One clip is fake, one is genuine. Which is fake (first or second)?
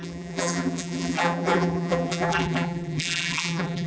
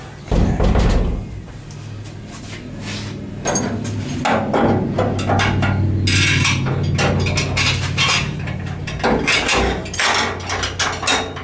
first